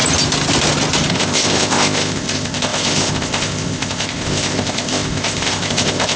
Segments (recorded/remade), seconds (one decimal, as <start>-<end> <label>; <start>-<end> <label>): 0.0-1.1 recorded; 1.1-6.2 remade